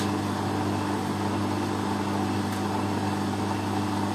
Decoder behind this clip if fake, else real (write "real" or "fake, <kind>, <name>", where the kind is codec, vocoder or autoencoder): real